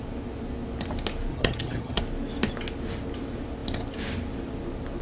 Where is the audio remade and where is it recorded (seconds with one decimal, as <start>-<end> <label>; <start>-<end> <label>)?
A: 0.0-1.3 recorded; 1.3-2.0 remade; 2.0-5.0 recorded